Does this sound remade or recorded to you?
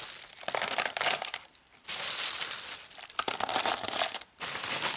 remade